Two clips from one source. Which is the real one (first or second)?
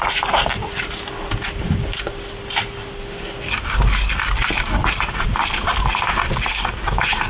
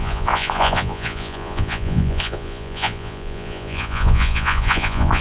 first